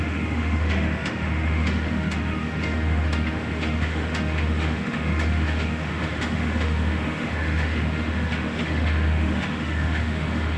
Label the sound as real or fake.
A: fake